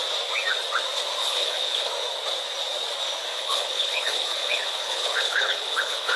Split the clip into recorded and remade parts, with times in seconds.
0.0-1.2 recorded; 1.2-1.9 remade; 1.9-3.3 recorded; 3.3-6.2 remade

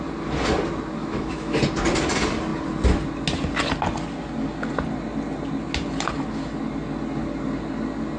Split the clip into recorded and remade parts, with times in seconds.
0.0-1.0 recorded; 1.0-1.6 remade; 1.6-8.2 recorded

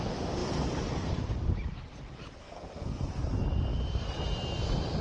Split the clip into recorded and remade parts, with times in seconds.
0.0-2.4 recorded; 2.4-3.1 remade; 3.1-5.0 recorded

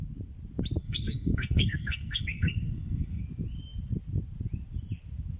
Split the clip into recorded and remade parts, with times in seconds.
0.0-0.8 recorded; 0.8-3.2 remade; 3.2-5.4 recorded

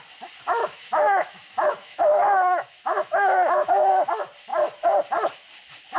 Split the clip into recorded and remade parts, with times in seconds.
0.0-0.6 recorded; 0.6-3.9 remade; 3.9-6.0 recorded